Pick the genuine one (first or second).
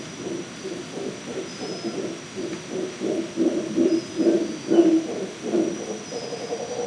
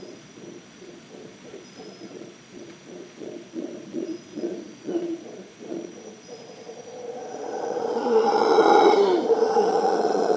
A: first